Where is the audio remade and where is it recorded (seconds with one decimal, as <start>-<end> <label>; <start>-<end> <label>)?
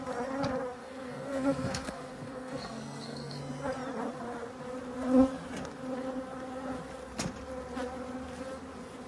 0.0-0.8 recorded; 0.8-3.4 remade; 3.4-9.1 recorded